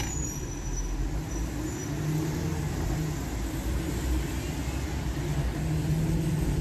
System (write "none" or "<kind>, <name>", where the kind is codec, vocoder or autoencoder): none